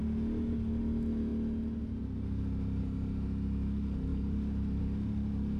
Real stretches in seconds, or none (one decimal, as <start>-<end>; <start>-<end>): 0.0-4.1; 4.8-5.6